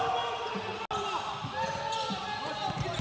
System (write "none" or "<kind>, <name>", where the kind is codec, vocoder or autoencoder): none